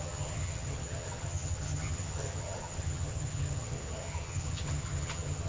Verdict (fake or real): fake